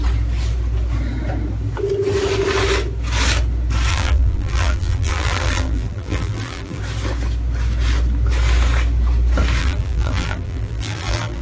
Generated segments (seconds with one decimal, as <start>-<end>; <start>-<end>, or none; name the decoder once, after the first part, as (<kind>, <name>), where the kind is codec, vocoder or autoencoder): 3.9-6.8 (vocoder, BigVGAN v2); 9.6-11.4